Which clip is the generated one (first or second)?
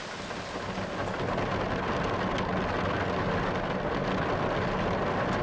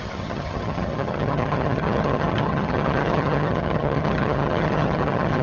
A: second